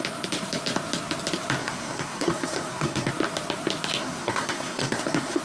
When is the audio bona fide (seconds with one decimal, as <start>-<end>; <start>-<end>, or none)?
0.0-1.6; 3.1-4.0